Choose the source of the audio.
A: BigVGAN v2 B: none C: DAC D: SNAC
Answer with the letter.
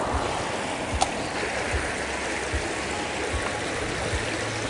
B